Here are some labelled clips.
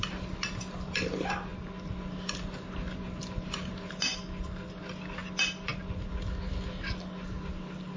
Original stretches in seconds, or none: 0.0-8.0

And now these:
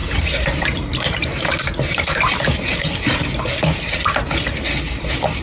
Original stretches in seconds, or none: 3.2-5.4

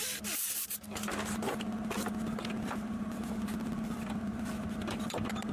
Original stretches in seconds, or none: 0.0-2.4

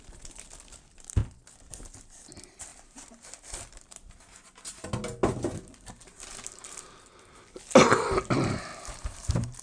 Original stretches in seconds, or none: 0.0-8.7